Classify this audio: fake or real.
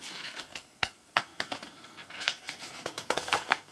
fake